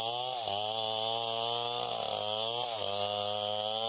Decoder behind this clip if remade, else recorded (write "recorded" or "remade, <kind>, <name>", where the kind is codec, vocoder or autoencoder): recorded